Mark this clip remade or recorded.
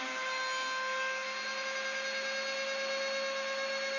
recorded